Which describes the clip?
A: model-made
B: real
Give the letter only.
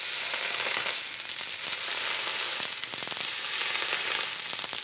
B